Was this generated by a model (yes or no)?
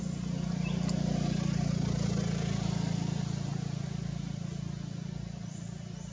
no